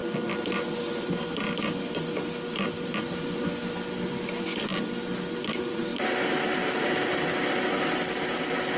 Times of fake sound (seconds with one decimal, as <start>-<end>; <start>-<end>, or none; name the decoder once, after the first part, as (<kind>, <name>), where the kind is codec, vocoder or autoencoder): none